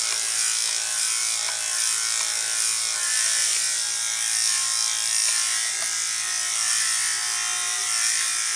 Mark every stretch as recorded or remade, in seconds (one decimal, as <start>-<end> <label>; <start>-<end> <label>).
0.0-8.6 recorded